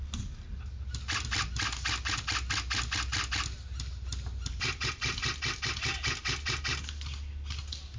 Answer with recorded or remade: recorded